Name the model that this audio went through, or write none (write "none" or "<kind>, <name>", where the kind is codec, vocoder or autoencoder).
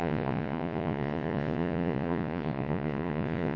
vocoder, Vocos